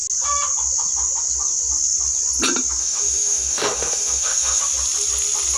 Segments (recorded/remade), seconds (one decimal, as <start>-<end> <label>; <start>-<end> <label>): 0.0-2.8 recorded; 2.8-4.6 remade; 4.6-5.6 recorded